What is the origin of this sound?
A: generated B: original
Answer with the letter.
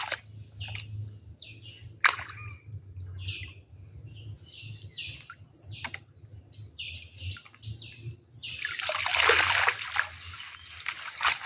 B